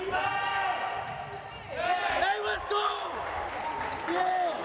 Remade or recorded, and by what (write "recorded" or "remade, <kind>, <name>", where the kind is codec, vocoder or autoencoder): recorded